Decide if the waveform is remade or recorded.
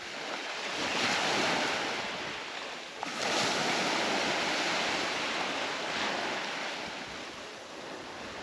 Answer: recorded